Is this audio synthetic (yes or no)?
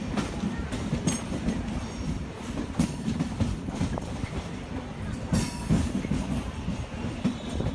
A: yes